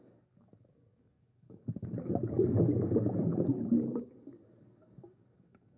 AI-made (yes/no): yes